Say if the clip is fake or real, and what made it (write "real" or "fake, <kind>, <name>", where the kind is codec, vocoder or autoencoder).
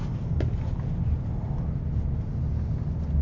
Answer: real